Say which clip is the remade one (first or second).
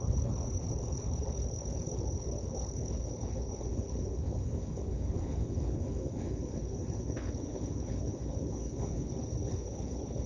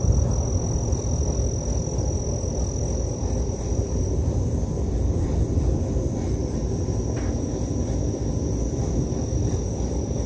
first